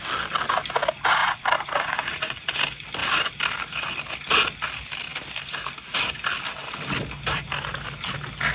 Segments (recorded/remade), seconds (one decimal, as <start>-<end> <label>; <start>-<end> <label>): 0.0-1.2 recorded; 1.2-2.5 remade; 2.5-8.5 recorded